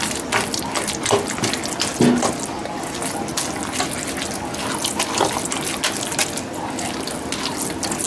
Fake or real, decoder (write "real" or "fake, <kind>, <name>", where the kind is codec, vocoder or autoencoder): real